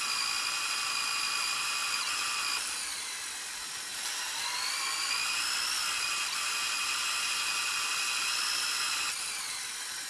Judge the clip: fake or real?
real